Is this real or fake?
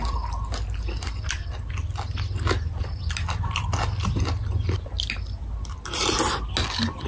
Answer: real